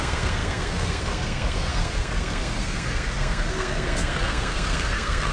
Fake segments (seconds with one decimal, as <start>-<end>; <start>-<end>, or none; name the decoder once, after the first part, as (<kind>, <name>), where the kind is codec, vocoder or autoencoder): 0.0-5.3 (codec, SNAC)

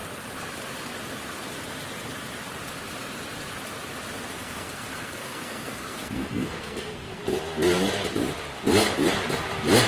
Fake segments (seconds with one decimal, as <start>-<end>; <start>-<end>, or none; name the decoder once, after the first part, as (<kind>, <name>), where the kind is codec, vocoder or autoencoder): 4.3-7.2 (codec, SNAC)

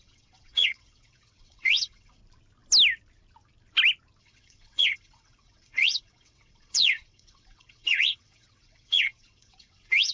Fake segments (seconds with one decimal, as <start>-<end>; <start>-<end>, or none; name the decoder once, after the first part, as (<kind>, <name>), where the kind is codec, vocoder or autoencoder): 0.0-2.2 (vocoder, WaveNeXt); 4.2-10.1

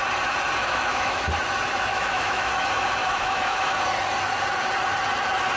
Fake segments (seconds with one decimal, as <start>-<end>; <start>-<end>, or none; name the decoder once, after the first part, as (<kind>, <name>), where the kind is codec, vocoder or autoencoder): 0.6-1.2 (autoencoder, DAC-VAE); 1.9-2.5; 3.0-3.8

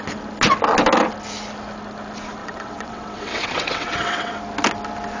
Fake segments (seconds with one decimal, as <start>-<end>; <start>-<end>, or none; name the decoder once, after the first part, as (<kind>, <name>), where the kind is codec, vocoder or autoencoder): 2.4-4.4 (vocoder, WaveNeXt)

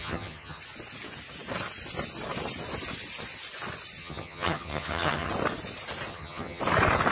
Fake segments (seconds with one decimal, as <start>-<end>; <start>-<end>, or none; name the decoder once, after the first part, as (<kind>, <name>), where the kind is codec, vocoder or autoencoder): 0.0-0.6 (vocoder, HiFi-GAN); 4.0-5.3; 6.1-6.6

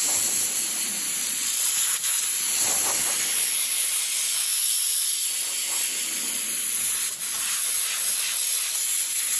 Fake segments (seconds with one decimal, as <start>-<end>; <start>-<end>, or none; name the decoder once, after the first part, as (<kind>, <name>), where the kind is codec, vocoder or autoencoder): 1.2-1.7 (vocoder, Vocos)